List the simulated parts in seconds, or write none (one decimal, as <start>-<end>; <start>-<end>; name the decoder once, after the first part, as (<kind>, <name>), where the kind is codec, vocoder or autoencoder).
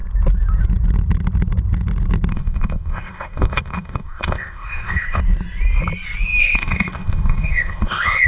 2.3-5.2 (codec, ZipCodec); 6.4-8.3